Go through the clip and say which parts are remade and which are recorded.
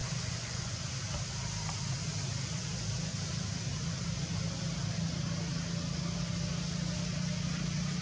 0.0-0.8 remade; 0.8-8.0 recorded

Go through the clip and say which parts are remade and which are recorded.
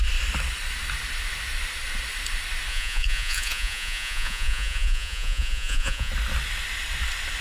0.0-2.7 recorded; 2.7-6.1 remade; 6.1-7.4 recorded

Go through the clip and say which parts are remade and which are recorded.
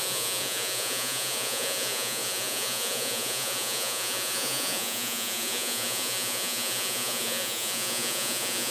0.0-8.7 remade